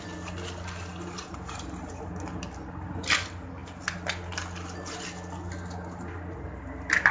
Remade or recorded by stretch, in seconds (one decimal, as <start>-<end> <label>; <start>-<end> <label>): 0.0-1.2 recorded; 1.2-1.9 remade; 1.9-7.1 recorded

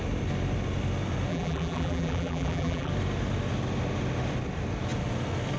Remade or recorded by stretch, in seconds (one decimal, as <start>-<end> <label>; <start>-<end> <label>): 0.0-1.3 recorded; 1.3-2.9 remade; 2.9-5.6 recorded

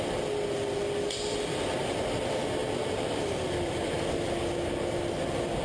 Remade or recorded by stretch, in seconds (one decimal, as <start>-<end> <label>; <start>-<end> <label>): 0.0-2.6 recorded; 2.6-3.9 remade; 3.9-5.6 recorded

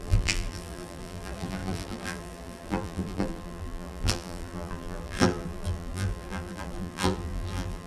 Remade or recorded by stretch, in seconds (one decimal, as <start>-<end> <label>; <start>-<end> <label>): 0.0-7.9 remade

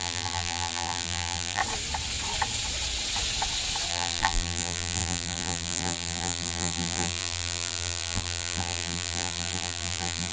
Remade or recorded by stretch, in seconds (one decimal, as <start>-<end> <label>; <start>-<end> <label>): 0.0-1.6 remade; 1.6-3.9 recorded; 3.9-10.3 remade

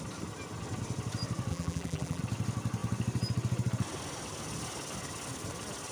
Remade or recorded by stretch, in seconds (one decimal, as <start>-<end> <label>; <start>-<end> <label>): 0.0-1.5 recorded; 1.5-2.2 remade; 2.2-5.9 recorded

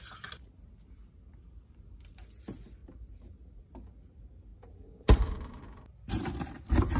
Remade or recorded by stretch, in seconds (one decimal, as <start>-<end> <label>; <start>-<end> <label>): 0.0-2.8 recorded; 2.8-3.6 remade; 3.6-4.5 recorded; 4.5-5.6 remade; 5.6-7.0 recorded